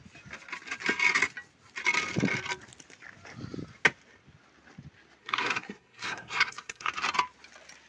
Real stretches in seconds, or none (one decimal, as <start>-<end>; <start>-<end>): 0.0-5.2; 6.9-7.9

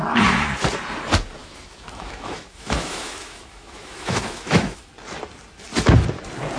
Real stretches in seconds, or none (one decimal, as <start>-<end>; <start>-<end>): 0.0-1.4; 4.9-6.6

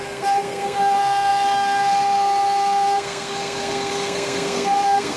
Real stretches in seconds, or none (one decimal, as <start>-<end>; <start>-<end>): none

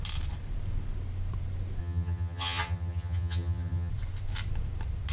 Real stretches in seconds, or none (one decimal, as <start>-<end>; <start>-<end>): 0.0-1.8; 3.9-5.1

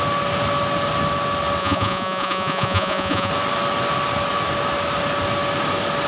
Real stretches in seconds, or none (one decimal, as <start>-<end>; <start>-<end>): 0.0-1.6; 3.3-6.1